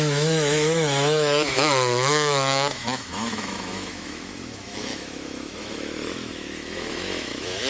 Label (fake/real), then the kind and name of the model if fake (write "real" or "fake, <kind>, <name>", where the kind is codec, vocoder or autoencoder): fake, autoencoder, DAC-VAE